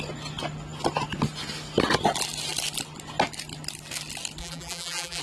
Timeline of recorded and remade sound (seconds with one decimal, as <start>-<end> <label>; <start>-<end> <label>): 0.0-4.4 recorded; 4.4-5.2 remade

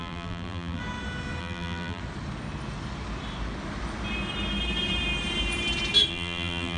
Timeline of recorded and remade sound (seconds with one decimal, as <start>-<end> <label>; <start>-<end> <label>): 0.0-0.8 remade; 0.8-1.4 recorded; 1.4-2.0 remade; 2.0-6.1 recorded; 6.1-6.8 remade

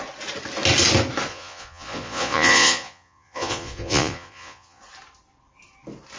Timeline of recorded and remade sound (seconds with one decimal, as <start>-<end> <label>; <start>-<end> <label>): 0.0-1.3 recorded; 1.3-4.8 remade; 4.8-6.2 recorded

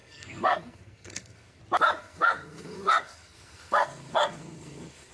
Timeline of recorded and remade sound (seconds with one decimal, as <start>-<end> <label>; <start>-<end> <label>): 0.0-1.6 remade; 1.6-2.0 recorded; 2.0-5.1 remade

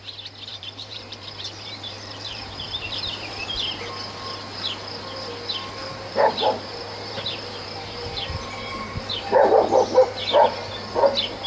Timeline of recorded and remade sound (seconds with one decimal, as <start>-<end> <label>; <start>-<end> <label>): 0.0-0.5 recorded; 0.5-3.3 remade; 3.3-5.8 recorded; 5.8-9.5 remade; 9.5-11.5 recorded

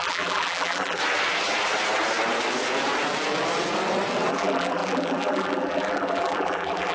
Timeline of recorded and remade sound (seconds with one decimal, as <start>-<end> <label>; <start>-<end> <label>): 0.0-1.0 remade; 1.0-4.3 recorded; 4.3-6.9 remade